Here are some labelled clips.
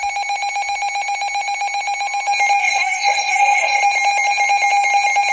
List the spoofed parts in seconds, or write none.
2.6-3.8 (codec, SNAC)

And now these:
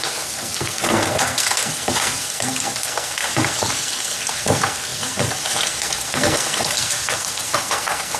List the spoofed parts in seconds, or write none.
0.0-8.2 (codec, SNAC)

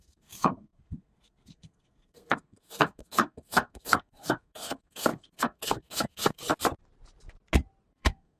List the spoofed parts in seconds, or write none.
0.0-6.4 (codec, SNAC); 7.9-8.4